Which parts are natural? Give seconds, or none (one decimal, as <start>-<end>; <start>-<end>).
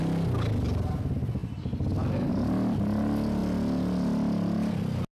0.0-5.2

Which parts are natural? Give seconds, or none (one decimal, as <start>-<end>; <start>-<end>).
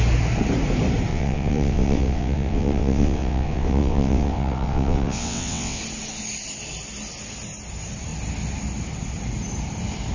0.0-1.1; 5.8-10.1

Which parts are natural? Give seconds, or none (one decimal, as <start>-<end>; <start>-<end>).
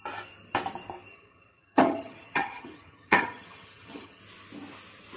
0.0-1.1; 4.2-5.2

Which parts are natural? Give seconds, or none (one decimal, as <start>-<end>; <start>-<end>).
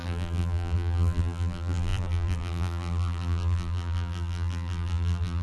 none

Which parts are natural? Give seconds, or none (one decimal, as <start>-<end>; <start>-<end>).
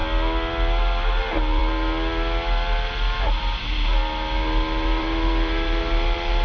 0.0-1.2; 1.6-5.0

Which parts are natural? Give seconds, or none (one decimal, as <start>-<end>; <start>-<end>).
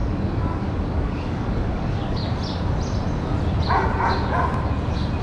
2.2-5.2